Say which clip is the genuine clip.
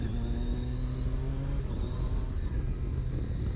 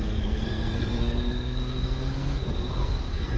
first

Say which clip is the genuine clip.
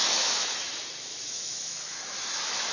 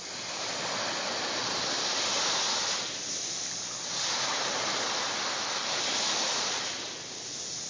second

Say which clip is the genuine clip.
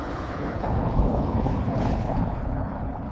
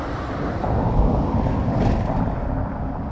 second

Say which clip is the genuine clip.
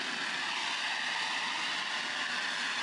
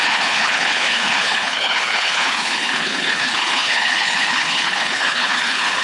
first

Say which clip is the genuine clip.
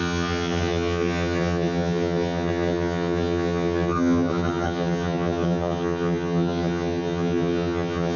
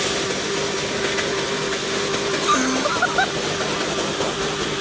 second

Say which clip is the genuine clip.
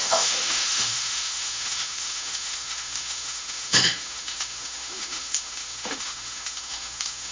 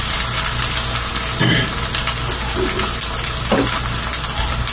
second